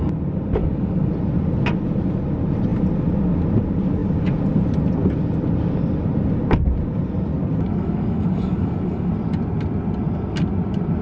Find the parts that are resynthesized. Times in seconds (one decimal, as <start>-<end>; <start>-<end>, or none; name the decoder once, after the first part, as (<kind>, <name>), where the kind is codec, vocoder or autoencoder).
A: 0.6-1.1 (codec, DAC); 7.7-9.1